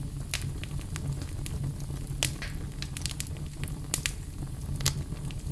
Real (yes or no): yes